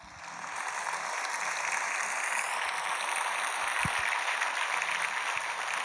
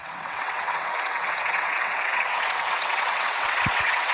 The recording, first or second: first